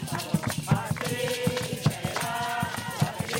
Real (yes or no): yes